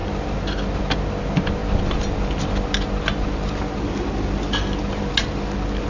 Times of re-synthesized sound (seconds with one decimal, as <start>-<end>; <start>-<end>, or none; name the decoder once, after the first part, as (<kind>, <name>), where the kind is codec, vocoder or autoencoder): none